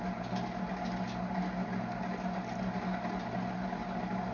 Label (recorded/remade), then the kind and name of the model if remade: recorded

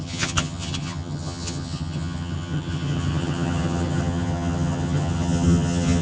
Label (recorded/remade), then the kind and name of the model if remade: remade, vocoder, HiFi-GAN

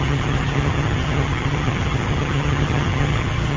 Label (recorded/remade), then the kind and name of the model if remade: remade, vocoder, HiFi-GAN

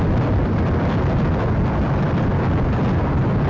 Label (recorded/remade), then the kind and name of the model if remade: recorded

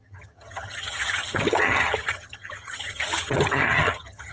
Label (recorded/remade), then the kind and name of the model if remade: remade, vocoder, HiFi-GAN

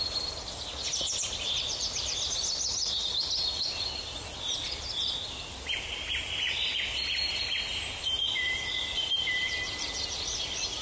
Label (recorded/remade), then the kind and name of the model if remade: recorded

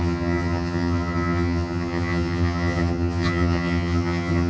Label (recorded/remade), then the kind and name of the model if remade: remade, vocoder, HiFi-GAN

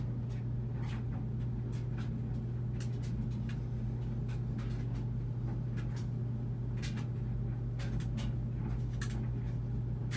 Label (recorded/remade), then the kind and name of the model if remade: recorded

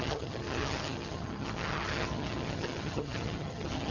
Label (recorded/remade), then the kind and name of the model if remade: remade, vocoder, HiFi-GAN